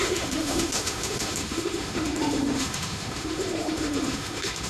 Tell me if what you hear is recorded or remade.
remade